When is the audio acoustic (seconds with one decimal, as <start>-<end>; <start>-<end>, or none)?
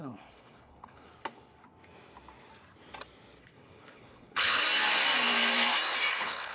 1.1-3.4; 4.6-6.1